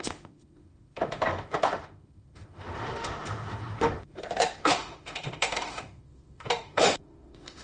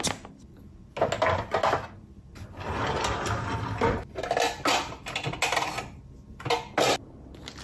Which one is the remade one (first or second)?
first